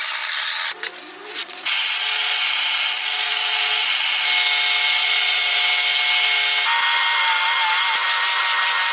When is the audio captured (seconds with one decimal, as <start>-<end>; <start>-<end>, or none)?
0.0-1.4; 4.2-5.0; 5.6-8.9